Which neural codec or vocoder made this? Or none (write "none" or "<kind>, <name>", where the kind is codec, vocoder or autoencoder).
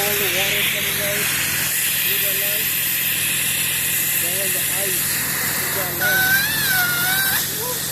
none